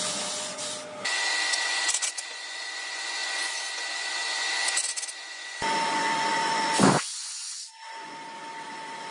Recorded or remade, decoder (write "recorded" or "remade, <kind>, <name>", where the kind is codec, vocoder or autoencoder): remade, vocoder, Vocos